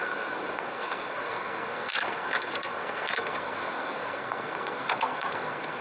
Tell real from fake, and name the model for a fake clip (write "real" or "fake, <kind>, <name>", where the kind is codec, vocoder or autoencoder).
fake, codec, SNAC